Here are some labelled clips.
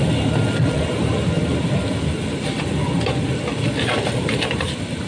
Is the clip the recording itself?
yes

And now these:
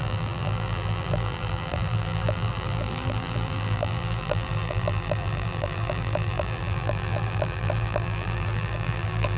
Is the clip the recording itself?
no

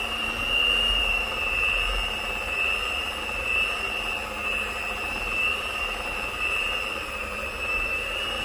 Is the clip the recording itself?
no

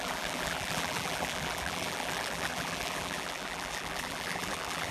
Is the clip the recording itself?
no